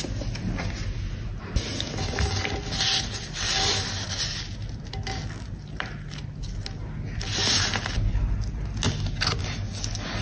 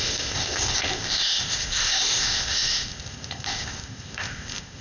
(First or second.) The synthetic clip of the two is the second